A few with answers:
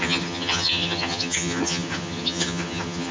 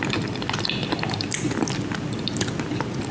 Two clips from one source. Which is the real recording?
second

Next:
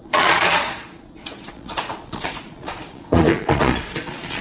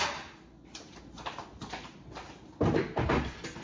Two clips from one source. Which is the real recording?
second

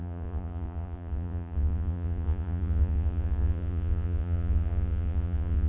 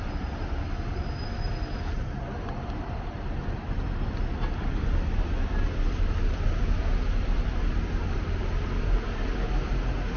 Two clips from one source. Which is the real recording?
second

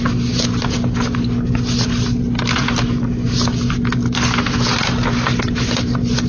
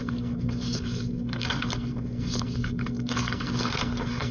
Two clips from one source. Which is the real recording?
first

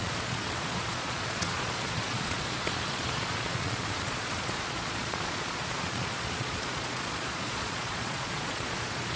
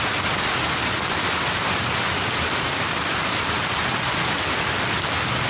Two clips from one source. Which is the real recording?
second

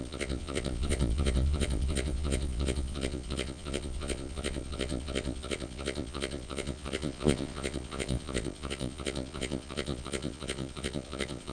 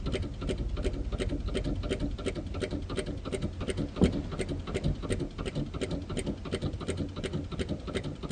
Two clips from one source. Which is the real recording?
second